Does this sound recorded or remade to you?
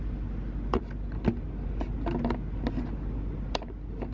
recorded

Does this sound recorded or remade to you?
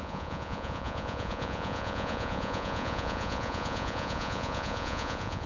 remade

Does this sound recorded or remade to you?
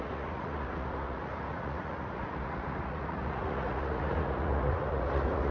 remade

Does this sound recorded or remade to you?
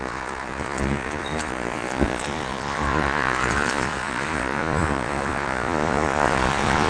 remade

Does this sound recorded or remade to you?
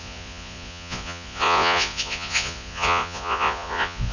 remade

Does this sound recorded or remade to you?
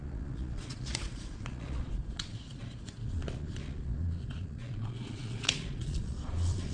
remade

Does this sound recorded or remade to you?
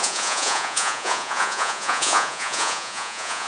remade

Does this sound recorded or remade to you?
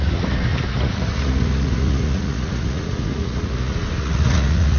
remade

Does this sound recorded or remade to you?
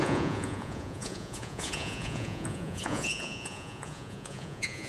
remade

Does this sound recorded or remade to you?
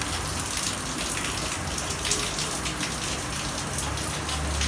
recorded